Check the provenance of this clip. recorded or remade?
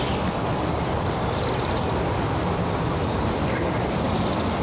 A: recorded